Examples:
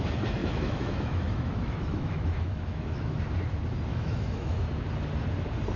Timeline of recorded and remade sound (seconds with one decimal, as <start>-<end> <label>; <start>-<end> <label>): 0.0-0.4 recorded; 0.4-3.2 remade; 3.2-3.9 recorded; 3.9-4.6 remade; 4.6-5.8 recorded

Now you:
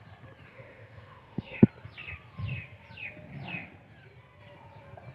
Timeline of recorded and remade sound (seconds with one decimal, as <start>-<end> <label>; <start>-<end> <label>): 0.0-0.5 recorded; 0.5-1.6 remade; 1.6-5.1 recorded

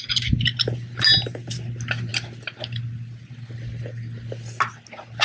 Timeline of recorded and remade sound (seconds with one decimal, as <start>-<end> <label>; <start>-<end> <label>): 0.0-5.2 recorded

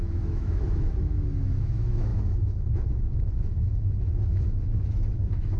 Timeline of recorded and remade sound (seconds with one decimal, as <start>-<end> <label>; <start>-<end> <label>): 0.0-5.6 remade

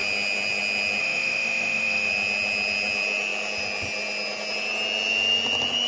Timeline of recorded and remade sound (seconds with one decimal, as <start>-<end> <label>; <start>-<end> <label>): 0.0-1.0 recorded; 1.0-2.1 remade; 2.1-5.9 recorded

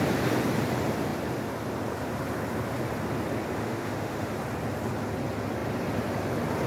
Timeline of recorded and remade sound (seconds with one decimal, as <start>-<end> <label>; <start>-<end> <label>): 0.0-3.6 recorded; 3.6-4.3 remade; 4.3-6.7 recorded